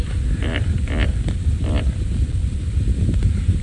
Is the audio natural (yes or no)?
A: yes